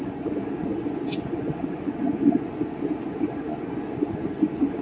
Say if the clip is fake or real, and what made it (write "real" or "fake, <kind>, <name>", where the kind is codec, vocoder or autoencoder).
fake, vocoder, Vocos